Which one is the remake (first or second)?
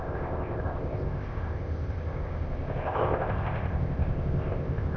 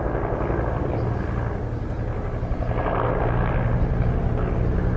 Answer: first